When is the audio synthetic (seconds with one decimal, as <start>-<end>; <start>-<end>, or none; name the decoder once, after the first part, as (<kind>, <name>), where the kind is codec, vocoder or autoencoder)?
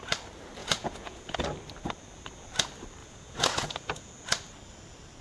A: 0.6-1.4 (vocoder, Vocos); 3.0-4.1